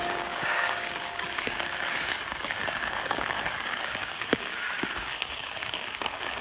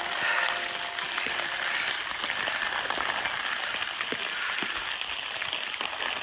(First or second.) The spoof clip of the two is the first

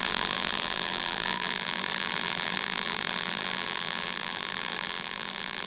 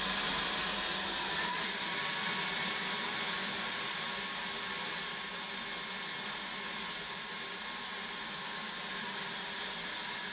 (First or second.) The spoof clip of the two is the first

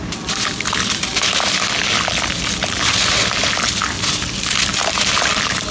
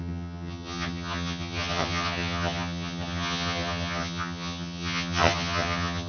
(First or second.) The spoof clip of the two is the second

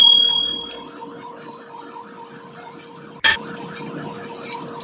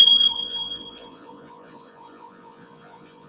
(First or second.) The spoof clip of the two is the second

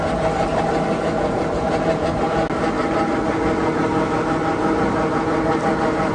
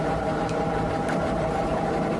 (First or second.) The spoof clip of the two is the second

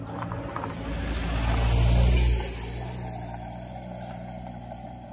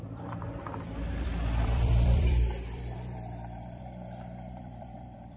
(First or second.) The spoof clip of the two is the second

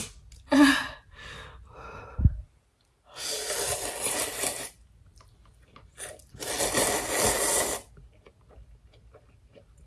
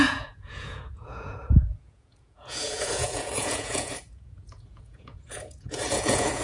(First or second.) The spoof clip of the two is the second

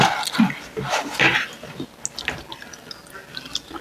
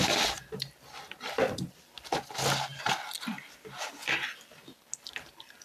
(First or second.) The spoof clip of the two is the second